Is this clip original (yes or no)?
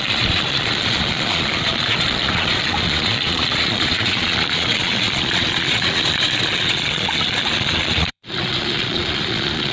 no